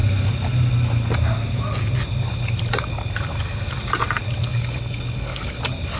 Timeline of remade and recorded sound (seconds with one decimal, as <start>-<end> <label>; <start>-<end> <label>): 0.0-4.5 recorded; 4.5-5.6 remade; 5.6-6.0 recorded